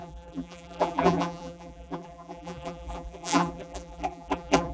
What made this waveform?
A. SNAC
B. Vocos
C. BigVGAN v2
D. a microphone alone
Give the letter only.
C